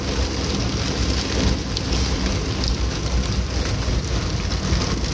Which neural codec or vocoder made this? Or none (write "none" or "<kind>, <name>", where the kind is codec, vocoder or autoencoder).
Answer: none